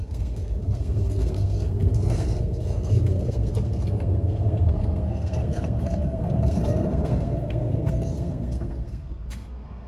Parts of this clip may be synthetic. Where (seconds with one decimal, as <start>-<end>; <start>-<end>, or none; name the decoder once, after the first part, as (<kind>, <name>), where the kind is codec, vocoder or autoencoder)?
0.0-9.9 (codec, SNAC)